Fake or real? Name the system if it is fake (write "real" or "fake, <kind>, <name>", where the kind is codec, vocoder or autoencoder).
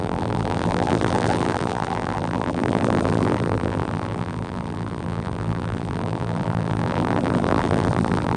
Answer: fake, vocoder, BigVGAN v2